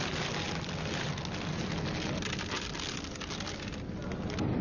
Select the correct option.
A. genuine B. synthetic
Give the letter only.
A